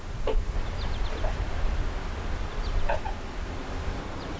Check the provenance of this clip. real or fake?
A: real